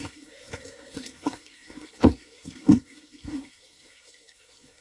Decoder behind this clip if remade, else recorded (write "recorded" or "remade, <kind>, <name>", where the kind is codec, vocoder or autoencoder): remade, codec, SNAC